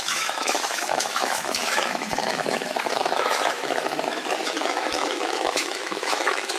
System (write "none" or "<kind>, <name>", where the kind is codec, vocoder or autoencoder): autoencoder, DAC-VAE